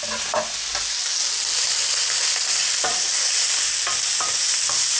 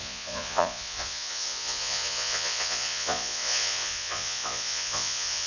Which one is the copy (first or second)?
second